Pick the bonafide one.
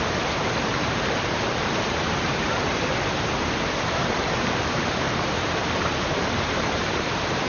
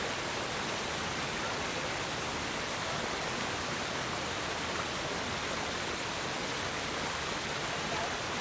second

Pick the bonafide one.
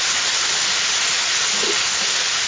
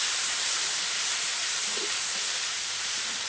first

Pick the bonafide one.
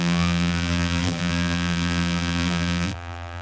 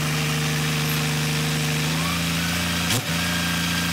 second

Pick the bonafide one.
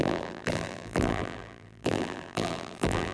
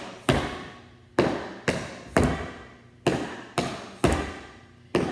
second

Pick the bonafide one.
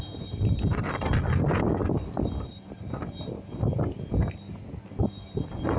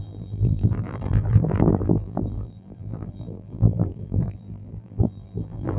first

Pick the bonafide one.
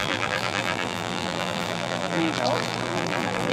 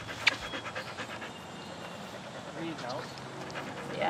second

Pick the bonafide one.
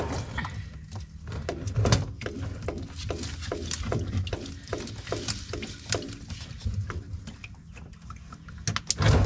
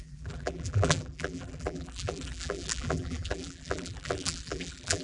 first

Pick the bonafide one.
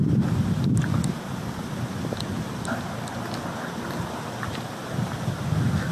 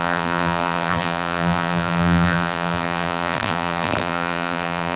first